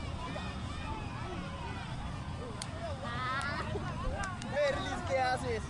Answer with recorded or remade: recorded